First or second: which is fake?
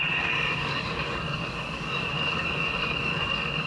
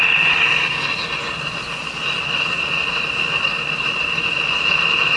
first